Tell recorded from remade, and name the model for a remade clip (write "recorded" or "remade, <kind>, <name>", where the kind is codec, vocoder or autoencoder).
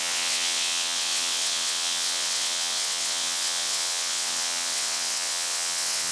remade, vocoder, WaveNeXt